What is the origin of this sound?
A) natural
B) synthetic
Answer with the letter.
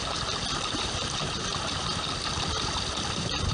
A